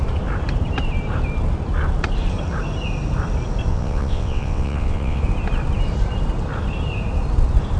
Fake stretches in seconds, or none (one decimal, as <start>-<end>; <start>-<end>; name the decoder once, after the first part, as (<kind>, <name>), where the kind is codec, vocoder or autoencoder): 3.7-5.2 (vocoder, WaveNeXt)